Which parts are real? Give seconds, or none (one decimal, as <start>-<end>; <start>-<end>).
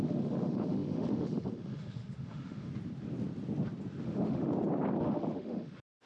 2.7-4.0; 4.5-5.0